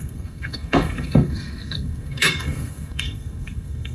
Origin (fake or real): fake